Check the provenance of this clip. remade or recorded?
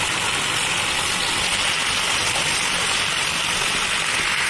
recorded